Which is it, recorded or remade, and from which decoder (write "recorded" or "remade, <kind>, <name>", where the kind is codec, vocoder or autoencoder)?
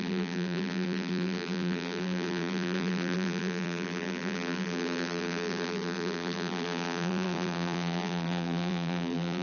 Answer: remade, vocoder, BigVGAN v2